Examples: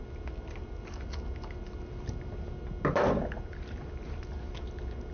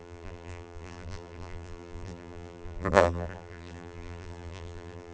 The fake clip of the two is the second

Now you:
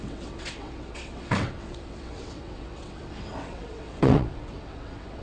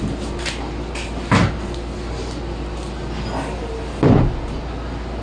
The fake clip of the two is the first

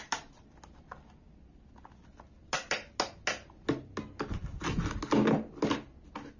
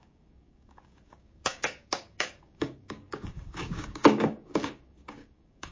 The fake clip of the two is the second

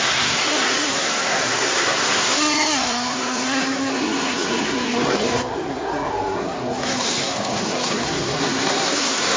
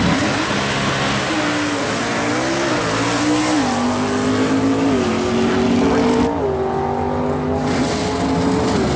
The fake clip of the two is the first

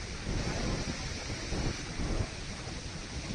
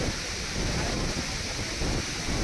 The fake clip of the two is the first